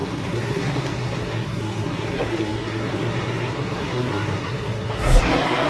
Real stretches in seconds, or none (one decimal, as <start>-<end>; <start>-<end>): none